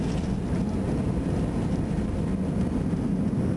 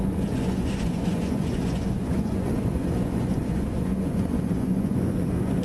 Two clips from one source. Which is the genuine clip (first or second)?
first